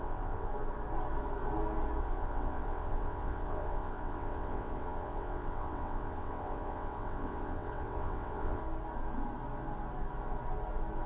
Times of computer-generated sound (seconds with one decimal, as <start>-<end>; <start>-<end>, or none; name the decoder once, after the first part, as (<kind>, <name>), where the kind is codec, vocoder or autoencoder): 0.0-0.5 (vocoder, WaveNeXt); 2.0-8.6